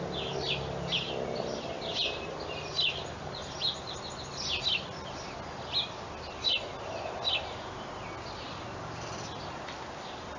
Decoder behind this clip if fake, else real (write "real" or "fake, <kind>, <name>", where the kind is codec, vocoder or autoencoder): real